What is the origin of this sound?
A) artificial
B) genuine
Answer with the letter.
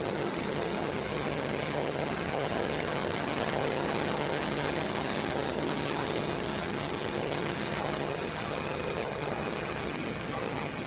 A